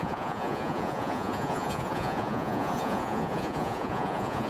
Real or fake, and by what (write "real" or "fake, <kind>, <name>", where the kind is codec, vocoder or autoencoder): fake, vocoder, Vocos